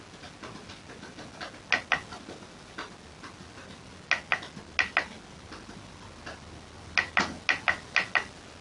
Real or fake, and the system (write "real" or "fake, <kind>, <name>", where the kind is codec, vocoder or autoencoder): real